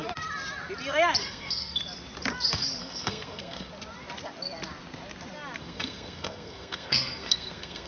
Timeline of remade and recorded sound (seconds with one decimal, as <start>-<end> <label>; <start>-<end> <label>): 0.0-1.2 recorded; 1.2-1.8 remade; 1.8-2.8 recorded; 2.8-3.7 remade; 3.7-5.6 recorded; 5.6-7.9 remade